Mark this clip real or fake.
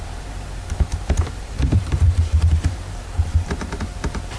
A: fake